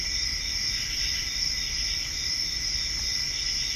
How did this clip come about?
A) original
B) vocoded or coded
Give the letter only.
A